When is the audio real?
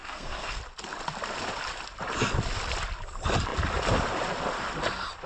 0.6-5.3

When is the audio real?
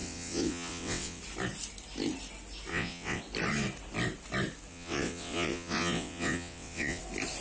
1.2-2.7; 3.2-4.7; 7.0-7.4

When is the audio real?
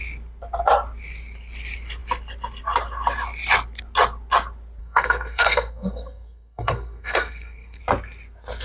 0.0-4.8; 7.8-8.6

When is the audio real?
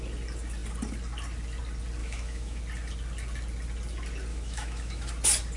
0.0-2.0; 2.6-4.3; 5.1-5.6